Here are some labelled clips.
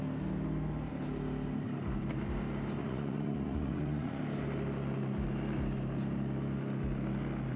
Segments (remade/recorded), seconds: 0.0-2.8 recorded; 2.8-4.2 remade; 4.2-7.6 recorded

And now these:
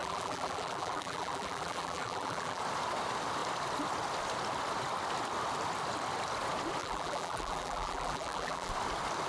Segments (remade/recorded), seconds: 0.0-2.6 remade; 2.6-6.8 recorded; 6.8-8.7 remade; 8.7-9.3 recorded

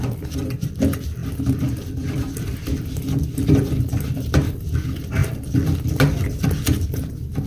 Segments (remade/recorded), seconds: 0.0-7.5 recorded

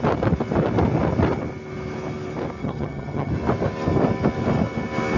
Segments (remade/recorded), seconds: 0.0-2.6 recorded; 2.6-3.3 remade; 3.3-5.2 recorded

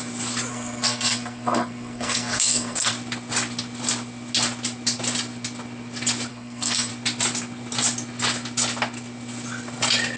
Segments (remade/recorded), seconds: 0.0-0.5 recorded; 0.5-2.9 remade; 2.9-6.3 recorded; 6.3-6.9 remade; 6.9-10.2 recorded

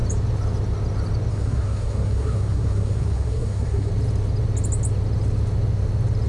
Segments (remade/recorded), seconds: 0.0-1.3 recorded; 1.3-3.9 remade; 3.9-6.3 recorded

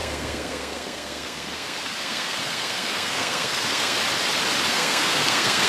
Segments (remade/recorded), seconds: 0.0-4.0 remade; 4.0-4.7 recorded; 4.7-5.7 remade